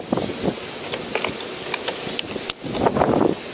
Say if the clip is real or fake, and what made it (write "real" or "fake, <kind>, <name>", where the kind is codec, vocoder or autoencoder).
real